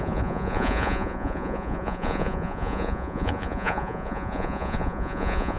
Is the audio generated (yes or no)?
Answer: yes